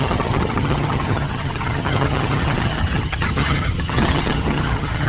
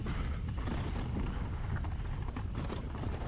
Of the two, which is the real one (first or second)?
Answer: second